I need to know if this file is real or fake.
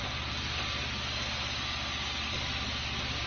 real